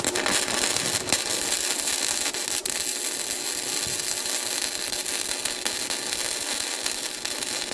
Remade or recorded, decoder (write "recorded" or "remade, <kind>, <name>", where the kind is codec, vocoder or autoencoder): recorded